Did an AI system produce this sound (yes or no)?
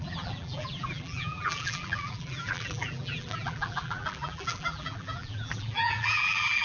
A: yes